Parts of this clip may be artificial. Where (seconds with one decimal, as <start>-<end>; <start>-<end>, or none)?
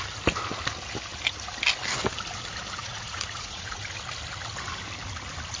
2.8-3.8